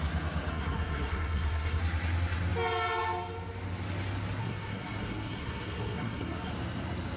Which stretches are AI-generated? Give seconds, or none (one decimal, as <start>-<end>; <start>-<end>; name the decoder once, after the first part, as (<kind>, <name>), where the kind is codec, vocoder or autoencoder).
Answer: 0.5-1.8 (codec, SNAC); 4.4-6.5